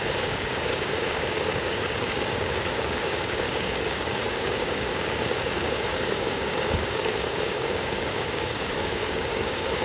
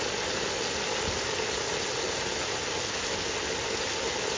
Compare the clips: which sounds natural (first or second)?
second